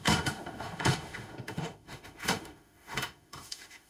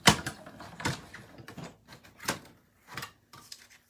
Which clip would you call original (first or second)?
second